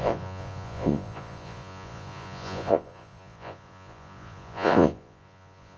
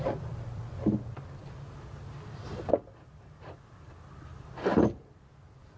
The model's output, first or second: first